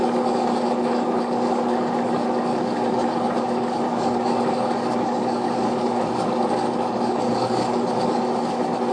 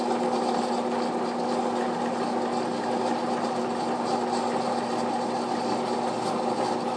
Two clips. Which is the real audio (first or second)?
second